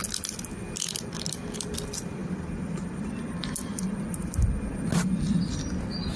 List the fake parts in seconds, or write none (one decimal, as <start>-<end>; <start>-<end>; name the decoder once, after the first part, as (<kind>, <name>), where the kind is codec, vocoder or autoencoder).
none